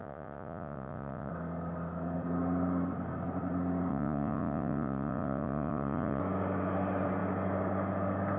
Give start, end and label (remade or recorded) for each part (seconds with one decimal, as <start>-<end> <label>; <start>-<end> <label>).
0.0-1.3 remade; 1.3-3.9 recorded; 3.9-6.2 remade; 6.2-8.4 recorded